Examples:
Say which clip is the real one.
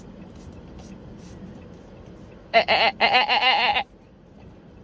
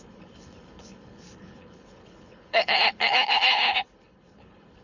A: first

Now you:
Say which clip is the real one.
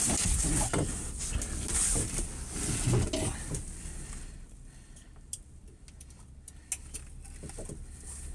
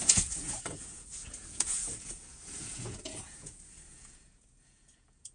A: first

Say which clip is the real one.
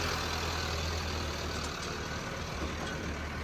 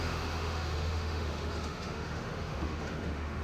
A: first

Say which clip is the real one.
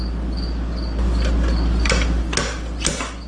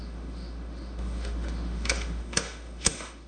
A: first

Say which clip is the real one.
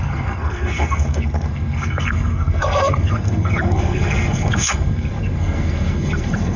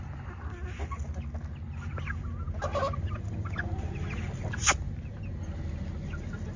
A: second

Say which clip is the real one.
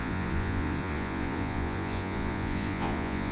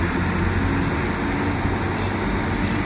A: second